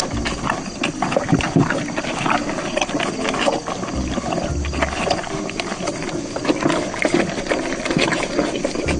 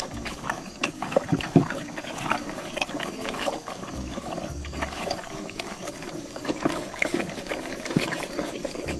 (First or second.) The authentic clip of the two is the first